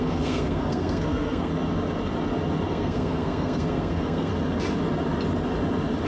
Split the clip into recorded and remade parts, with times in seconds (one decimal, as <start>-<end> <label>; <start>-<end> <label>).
0.0-1.5 remade; 1.5-2.7 recorded; 2.7-4.3 remade; 4.3-6.1 recorded